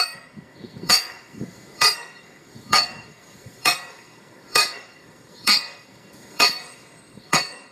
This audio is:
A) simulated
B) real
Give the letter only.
A